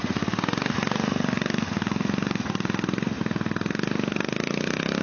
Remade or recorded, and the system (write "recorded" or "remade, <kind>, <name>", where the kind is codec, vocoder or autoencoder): recorded